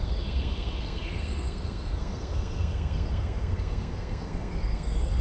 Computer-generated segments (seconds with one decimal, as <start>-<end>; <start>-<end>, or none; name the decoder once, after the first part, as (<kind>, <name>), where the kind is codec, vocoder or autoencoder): 0.0-5.2 (codec, SNAC)